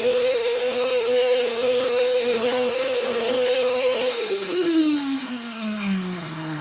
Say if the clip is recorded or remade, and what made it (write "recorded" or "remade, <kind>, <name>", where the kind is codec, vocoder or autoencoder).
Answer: remade, codec, SNAC